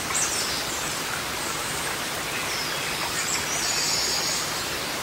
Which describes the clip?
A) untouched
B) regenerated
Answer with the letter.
A